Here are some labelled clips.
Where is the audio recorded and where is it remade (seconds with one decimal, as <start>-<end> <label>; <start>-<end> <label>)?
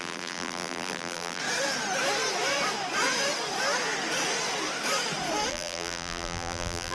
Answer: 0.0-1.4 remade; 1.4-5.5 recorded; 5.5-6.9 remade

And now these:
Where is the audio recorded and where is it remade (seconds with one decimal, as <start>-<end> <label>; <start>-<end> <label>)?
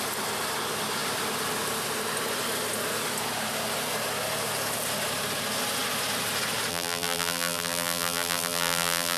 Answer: 0.0-6.7 recorded; 6.7-9.2 remade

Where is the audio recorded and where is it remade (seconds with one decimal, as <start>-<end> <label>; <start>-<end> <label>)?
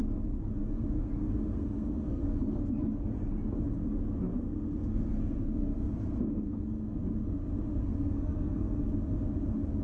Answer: 0.0-0.6 recorded; 0.6-2.2 remade; 2.2-4.3 recorded; 4.3-7.0 remade; 7.0-7.7 recorded; 7.7-8.8 remade; 8.8-9.8 recorded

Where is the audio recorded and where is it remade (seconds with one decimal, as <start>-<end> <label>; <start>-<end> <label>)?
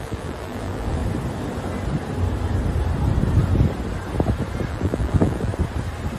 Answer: 0.0-1.0 remade; 1.0-4.7 recorded; 4.7-5.5 remade; 5.5-6.2 recorded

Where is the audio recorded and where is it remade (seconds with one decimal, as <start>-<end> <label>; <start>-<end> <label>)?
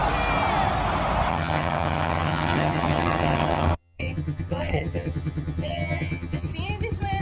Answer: 0.0-1.3 recorded; 1.3-6.5 remade; 6.5-7.2 recorded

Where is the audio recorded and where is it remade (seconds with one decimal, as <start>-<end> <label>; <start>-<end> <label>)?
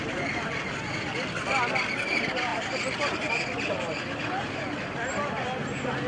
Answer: 0.0-6.1 recorded